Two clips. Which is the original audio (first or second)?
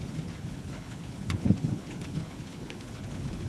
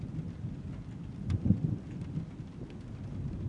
second